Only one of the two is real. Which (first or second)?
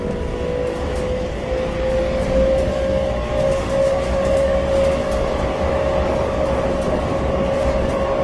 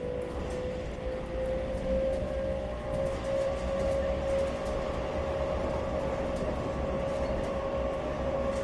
second